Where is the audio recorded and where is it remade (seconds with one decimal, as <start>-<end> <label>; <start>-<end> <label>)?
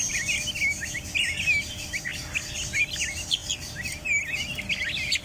0.0-5.2 recorded